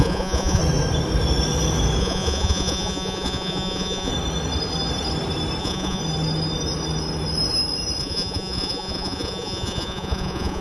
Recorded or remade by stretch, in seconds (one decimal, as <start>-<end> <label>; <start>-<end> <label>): 0.0-0.6 remade; 0.6-2.0 recorded; 2.0-4.1 remade; 4.1-5.6 recorded; 5.6-6.0 remade; 6.0-8.0 recorded; 8.0-10.6 remade